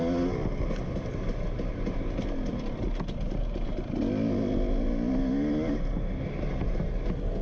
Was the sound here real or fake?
real